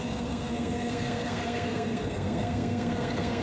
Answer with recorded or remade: remade